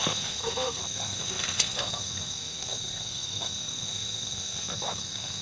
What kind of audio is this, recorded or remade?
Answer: remade